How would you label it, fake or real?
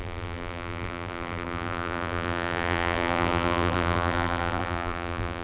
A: fake